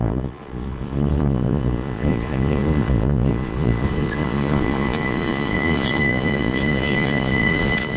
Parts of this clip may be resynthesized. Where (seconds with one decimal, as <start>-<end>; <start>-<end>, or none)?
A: 0.0-8.0